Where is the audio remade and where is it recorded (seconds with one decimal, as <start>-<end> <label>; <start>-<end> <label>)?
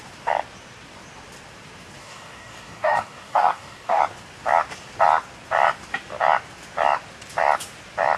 0.0-2.0 recorded; 2.0-4.0 remade; 4.0-8.2 recorded